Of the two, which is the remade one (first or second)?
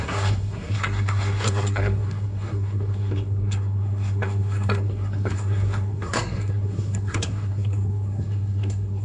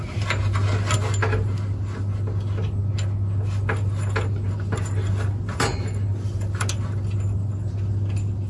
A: first